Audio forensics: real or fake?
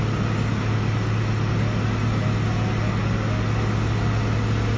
real